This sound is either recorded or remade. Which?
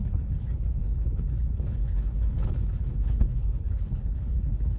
remade